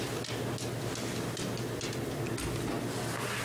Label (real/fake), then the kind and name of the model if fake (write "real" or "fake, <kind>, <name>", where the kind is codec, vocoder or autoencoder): real